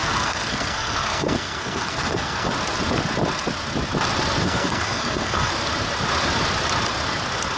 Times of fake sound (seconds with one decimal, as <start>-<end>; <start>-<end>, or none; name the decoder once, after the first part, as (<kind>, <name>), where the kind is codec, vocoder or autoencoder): 0.0-2.5 (codec, SNAC); 4.4-5.5